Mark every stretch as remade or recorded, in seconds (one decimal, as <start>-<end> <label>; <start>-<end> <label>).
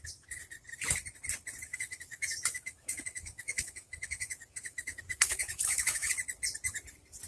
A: 0.0-1.7 recorded; 1.7-6.1 remade; 6.1-7.3 recorded